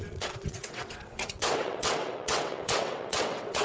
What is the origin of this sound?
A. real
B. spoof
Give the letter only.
B